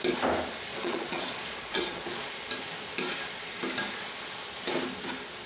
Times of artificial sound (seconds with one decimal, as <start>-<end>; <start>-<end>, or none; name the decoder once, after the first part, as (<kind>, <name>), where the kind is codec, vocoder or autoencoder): 0.7-2.3 (vocoder, Vocos)